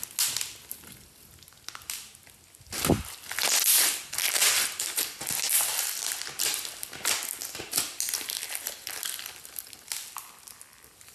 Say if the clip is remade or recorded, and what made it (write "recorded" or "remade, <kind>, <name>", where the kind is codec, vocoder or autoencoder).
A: recorded